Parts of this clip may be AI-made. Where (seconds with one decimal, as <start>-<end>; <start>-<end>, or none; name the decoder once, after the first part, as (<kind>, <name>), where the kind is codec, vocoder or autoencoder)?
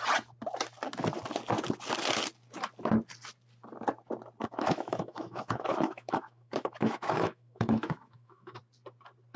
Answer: 4.4-8.6 (autoencoder, DAC-VAE)